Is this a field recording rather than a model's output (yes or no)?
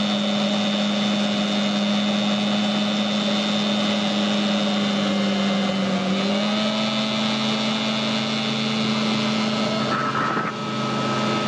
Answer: yes